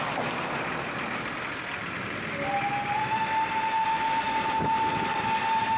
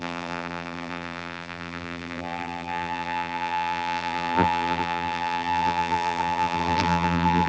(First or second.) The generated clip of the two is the second